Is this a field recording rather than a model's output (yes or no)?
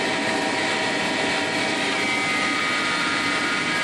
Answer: yes